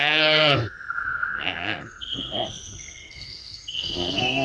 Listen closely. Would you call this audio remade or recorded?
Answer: remade